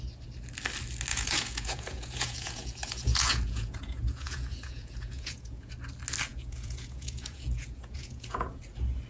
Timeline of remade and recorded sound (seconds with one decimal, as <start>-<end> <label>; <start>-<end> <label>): 0.0-1.1 recorded; 1.1-5.7 remade; 5.7-6.3 recorded; 6.3-8.6 remade; 8.6-9.1 recorded